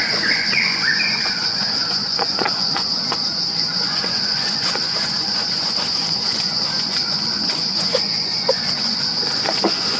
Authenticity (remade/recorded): remade